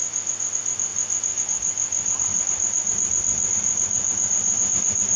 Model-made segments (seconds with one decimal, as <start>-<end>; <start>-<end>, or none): none